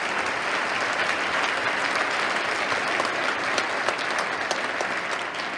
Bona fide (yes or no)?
yes